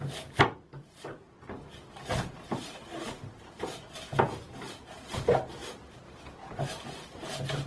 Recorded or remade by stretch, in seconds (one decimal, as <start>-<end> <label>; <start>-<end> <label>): 0.0-7.7 recorded